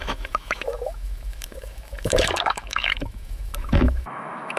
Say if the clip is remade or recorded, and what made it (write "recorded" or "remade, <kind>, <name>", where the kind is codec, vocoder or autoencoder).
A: remade, autoencoder, DAC-VAE